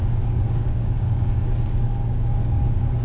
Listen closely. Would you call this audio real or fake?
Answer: fake